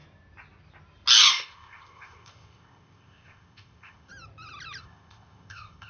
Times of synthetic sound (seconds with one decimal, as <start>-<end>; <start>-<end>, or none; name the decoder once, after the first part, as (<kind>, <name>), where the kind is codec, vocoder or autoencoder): 1.3-4.1 (codec, ZipCodec); 4.8-5.9